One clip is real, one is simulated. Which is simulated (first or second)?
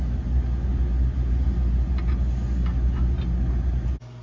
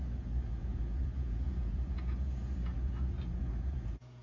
second